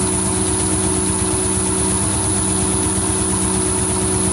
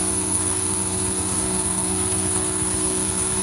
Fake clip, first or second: second